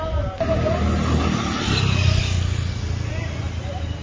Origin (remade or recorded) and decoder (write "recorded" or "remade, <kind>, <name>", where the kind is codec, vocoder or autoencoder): recorded